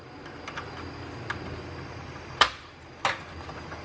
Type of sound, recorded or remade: recorded